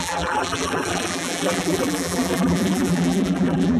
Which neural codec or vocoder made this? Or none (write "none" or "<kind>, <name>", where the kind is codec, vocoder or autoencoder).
vocoder, BigVGAN v2